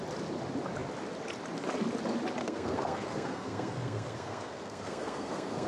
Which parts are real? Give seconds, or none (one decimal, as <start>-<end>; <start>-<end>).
0.0-2.4